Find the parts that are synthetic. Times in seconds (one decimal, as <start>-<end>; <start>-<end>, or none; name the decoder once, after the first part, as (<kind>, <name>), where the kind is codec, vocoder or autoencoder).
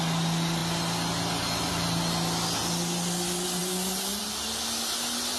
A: none